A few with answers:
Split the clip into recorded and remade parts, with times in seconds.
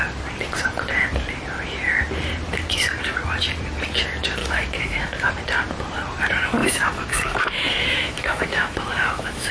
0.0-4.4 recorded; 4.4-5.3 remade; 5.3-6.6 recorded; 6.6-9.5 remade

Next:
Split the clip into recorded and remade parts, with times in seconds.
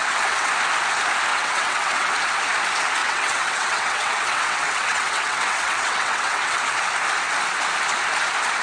0.0-0.5 remade; 0.5-1.3 recorded; 1.3-2.1 remade; 2.1-3.0 recorded; 3.0-6.6 remade; 6.6-8.6 recorded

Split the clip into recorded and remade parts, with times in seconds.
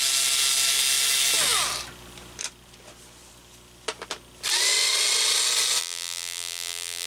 0.0-5.8 recorded; 5.8-7.1 remade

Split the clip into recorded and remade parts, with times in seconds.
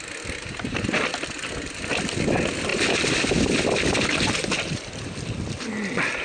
0.0-6.2 recorded